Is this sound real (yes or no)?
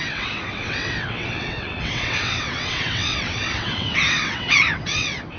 no